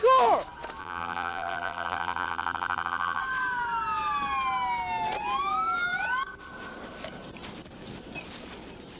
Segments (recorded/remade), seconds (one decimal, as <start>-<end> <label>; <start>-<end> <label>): 0.0-0.8 recorded; 0.8-3.2 remade; 3.2-9.0 recorded